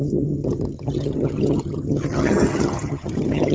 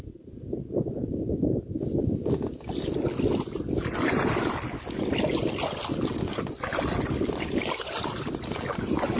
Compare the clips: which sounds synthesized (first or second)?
first